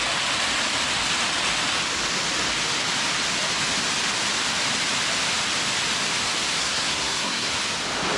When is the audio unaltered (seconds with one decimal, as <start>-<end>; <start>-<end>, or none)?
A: 0.0-6.6; 7.5-8.2